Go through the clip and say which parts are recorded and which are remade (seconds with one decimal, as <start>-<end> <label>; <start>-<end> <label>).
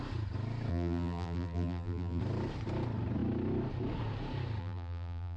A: 0.0-0.7 recorded; 0.7-2.2 remade; 2.2-4.6 recorded; 4.6-5.4 remade